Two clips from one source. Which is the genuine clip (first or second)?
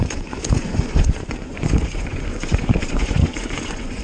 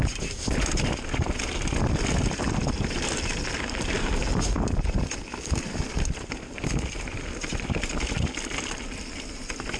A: second